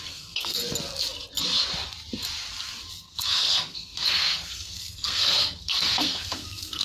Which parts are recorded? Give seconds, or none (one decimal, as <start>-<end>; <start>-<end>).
0.6-2.9